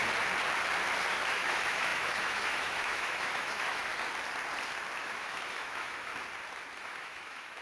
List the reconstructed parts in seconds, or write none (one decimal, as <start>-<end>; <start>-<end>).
1.3-3.9; 5.0-6.1; 6.8-7.6